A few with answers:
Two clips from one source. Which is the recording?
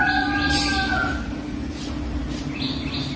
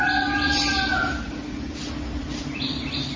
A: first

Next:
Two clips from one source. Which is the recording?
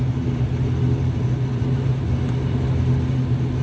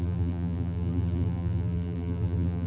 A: first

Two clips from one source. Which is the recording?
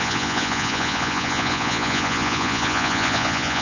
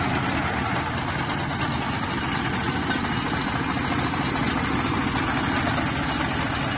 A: second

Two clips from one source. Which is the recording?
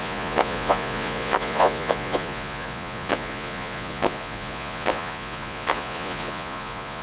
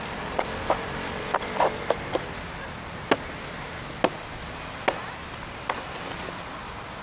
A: second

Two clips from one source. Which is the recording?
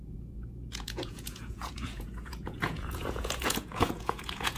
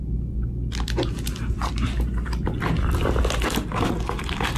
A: second